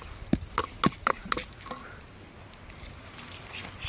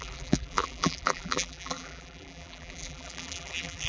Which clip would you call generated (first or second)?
second